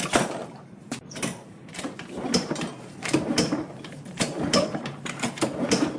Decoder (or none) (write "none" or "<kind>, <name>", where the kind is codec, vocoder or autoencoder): vocoder, BigVGAN v2